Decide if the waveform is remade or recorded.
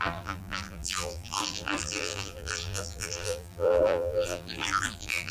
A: remade